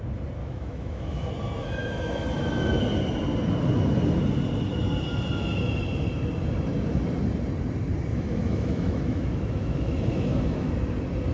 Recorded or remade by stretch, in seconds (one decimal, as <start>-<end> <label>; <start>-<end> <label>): 0.0-0.4 recorded; 0.4-1.3 remade; 1.3-1.8 recorded; 1.8-2.8 remade; 2.8-8.1 recorded; 8.1-10.7 remade; 10.7-11.3 recorded